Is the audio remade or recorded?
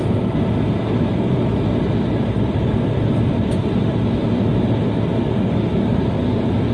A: recorded